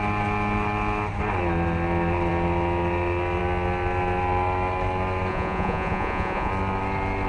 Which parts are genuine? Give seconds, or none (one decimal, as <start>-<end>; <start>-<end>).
0.0-5.3; 6.5-7.3